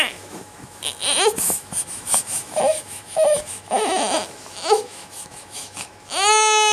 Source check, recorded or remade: remade